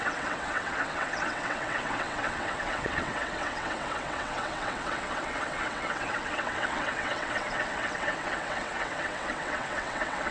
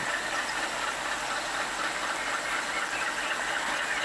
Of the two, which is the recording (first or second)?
second